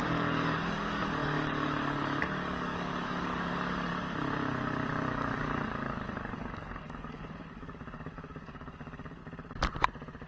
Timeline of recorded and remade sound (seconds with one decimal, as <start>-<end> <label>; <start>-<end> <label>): 0.0-3.9 remade; 3.9-5.1 recorded; 5.1-9.2 remade; 9.2-10.3 recorded